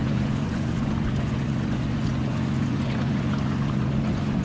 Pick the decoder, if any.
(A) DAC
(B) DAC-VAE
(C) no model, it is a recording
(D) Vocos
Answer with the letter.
D